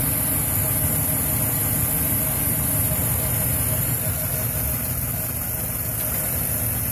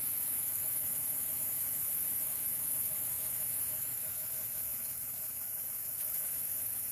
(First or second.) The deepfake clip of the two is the second